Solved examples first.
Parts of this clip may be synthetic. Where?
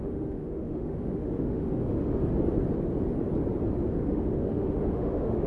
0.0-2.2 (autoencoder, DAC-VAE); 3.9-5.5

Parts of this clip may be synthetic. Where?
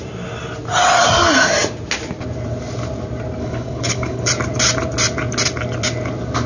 3.4-4.3 (codec, HILCodec)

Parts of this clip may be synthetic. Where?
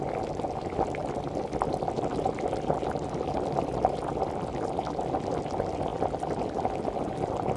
none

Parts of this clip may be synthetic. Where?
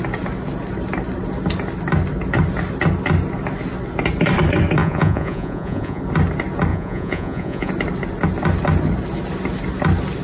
4.8-6.0 (vocoder, Vocos); 6.7-7.7